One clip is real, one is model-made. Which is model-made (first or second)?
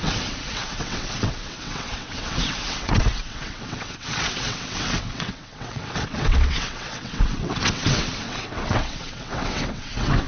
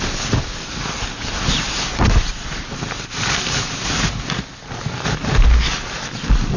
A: first